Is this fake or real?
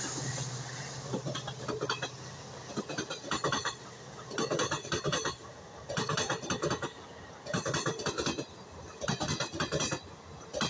real